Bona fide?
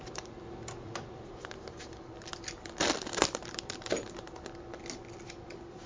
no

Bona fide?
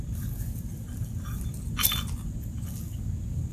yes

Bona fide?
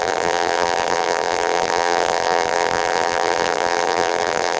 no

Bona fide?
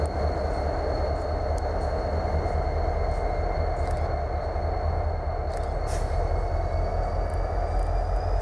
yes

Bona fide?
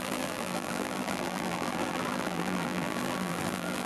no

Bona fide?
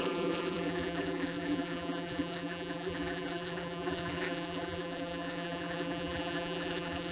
no